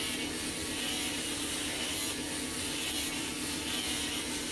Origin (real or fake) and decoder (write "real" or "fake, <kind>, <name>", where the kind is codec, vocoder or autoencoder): real